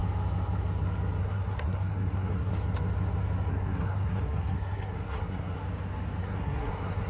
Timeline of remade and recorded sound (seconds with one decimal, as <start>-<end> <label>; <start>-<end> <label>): 0.0-1.2 recorded; 1.2-2.5 remade; 2.5-3.5 recorded; 3.5-5.6 remade; 5.6-6.2 recorded; 6.2-7.1 remade

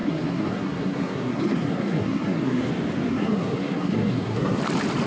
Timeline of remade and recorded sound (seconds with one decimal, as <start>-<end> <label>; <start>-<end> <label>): 0.0-2.7 remade; 2.7-3.1 recorded; 3.1-4.6 remade; 4.6-5.1 recorded

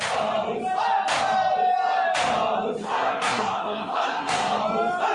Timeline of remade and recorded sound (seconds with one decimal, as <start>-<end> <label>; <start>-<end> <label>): 0.0-2.8 recorded; 2.8-4.6 remade; 4.6-5.1 recorded

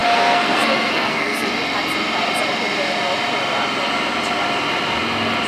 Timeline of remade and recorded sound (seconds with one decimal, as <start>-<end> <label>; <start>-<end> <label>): 0.0-1.5 remade; 1.5-5.5 recorded

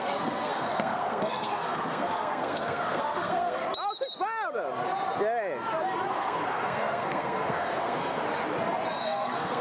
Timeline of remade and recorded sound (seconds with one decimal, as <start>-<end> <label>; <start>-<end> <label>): 0.0-3.6 remade; 3.6-6.1 recorded; 6.1-8.2 remade; 8.2-9.0 recorded; 9.0-9.6 remade